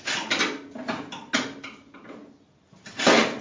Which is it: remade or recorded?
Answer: recorded